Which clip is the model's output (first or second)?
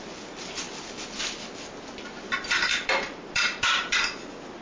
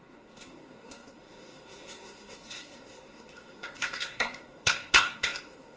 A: second